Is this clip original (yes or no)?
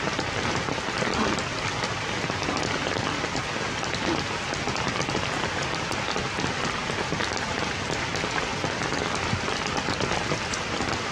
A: yes